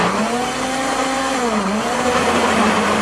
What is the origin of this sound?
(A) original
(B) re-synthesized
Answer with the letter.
B